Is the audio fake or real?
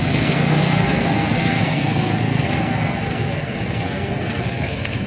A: fake